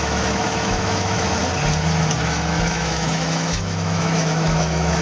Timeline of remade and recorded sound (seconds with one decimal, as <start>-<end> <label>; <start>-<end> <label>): 0.0-1.4 remade; 1.4-2.1 recorded; 2.1-5.0 remade